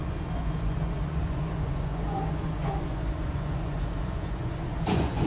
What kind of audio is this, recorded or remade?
remade